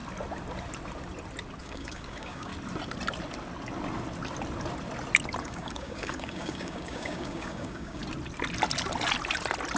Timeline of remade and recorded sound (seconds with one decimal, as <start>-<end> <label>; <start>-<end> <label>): 0.0-1.6 recorded; 1.6-2.5 remade; 2.5-5.4 recorded; 5.4-8.0 remade; 8.0-9.8 recorded